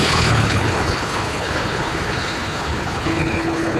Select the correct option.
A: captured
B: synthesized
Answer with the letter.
B